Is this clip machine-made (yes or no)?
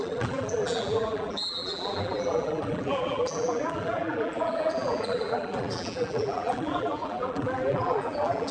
yes